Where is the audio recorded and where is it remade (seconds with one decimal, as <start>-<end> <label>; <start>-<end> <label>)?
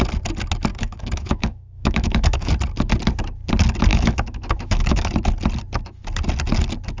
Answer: 0.0-0.7 recorded; 0.7-2.5 remade; 2.5-3.9 recorded; 3.9-5.1 remade; 5.1-7.0 recorded